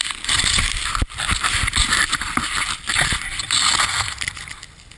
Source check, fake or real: real